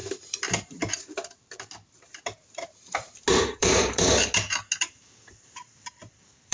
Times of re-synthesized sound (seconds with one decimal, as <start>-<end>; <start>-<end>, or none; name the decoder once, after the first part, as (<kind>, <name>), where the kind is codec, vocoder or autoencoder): 1.4-2.4 (vocoder, BigVGAN v2); 3.3-4.1; 4.8-6.5